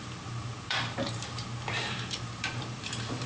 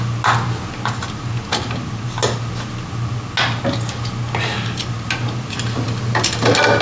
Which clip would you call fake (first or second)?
first